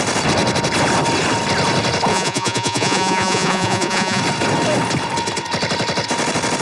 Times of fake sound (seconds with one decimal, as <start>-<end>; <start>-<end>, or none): 2.1-4.2